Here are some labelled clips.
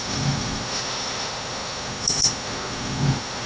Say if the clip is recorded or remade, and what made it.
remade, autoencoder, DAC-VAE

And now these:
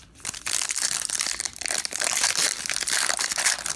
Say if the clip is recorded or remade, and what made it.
remade, vocoder, BigVGAN v2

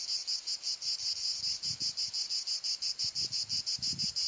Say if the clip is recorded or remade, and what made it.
recorded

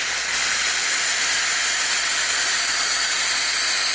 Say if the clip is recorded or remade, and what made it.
recorded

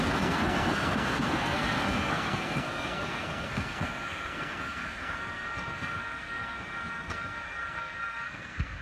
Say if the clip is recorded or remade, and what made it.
remade, codec, SNAC